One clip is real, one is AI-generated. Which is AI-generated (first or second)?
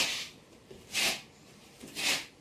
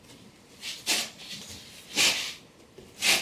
first